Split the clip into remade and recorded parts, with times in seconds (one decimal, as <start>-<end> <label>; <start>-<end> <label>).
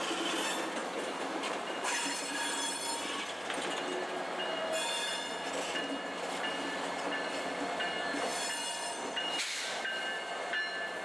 0.0-0.8 recorded; 0.8-2.8 remade; 2.8-11.0 recorded